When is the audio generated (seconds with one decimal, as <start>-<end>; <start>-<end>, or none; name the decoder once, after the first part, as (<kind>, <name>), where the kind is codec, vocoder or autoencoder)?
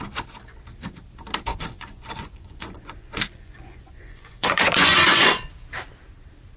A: 1.5-5.5 (vocoder, Vocos)